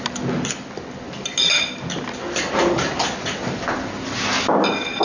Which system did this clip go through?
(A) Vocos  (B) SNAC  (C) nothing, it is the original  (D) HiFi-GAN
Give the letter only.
C